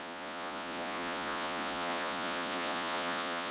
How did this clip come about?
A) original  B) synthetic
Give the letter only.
B